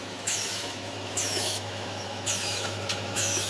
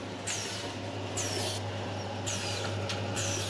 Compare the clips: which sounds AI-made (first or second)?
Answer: first